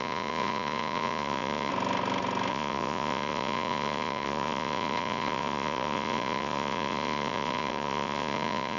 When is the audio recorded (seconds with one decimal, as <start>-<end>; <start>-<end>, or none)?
1.7-2.5